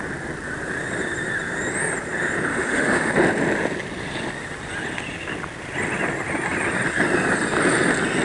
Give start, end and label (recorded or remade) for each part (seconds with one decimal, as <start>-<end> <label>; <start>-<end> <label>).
0.0-2.5 recorded; 2.5-3.1 remade; 3.1-8.2 recorded